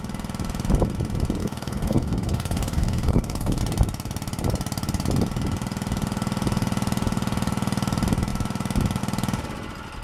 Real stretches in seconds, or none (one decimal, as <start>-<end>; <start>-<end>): 0.0-1.4; 3.6-10.0

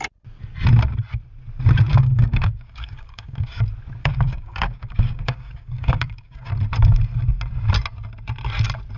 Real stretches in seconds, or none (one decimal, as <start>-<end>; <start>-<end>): 0.0-1.9; 3.5-4.0; 6.5-9.0